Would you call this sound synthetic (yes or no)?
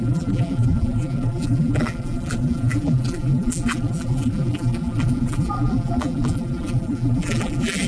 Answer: yes